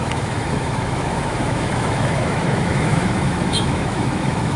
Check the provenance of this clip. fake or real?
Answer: fake